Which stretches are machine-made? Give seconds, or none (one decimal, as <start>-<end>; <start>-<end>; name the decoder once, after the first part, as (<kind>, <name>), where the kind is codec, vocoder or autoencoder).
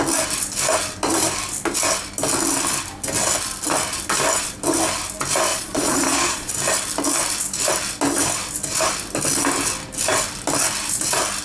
5.5-6.5 (vocoder, Vocos)